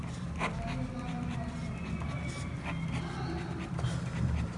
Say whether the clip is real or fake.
real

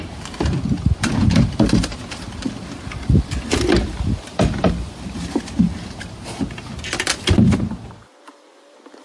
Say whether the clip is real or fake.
real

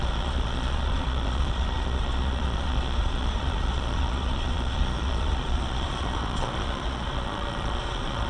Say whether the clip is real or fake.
fake